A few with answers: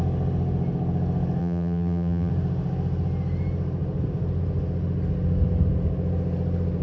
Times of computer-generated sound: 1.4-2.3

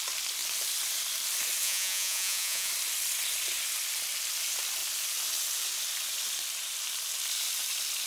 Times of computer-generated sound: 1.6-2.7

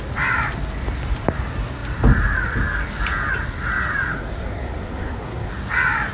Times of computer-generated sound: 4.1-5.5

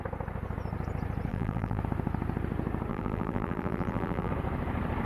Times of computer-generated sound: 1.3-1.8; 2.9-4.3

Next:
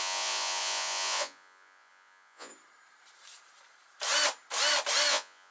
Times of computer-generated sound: 0.0-2.5; 5.1-5.5

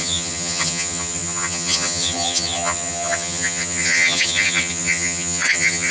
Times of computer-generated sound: 0.0-5.9

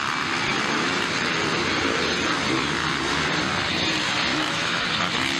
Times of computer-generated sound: 4.3-4.9